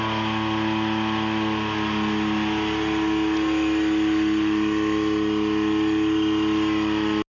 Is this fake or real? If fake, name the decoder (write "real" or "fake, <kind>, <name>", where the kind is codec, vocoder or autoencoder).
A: real